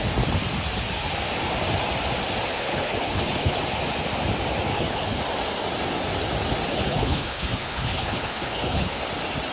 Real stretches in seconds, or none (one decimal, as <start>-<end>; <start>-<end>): 0.0-2.5; 3.6-4.7; 5.2-6.7; 9.0-9.5